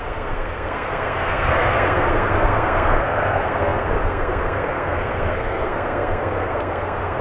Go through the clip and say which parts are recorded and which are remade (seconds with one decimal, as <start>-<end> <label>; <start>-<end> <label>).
0.0-7.2 remade